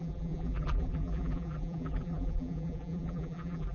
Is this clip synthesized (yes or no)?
yes